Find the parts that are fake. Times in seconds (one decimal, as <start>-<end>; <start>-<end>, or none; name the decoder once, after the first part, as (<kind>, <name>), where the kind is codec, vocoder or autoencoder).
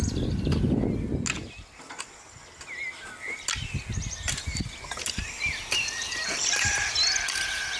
none